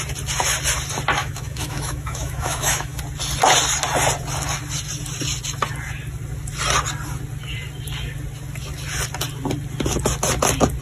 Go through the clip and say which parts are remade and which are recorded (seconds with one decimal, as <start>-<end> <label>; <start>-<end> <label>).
0.0-1.2 recorded; 1.2-3.0 remade; 3.0-10.8 recorded